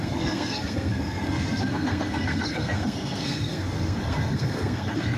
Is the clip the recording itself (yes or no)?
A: no